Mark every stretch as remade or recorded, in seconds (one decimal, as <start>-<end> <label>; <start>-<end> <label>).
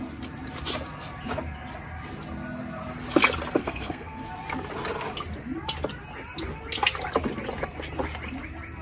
0.0-3.6 recorded; 3.6-4.3 remade; 4.3-8.8 recorded